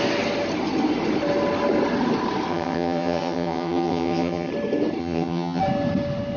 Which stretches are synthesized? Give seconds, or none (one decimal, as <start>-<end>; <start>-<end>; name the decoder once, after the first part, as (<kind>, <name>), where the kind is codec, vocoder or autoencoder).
2.5-4.5 (vocoder, HiFi-GAN); 5.0-5.6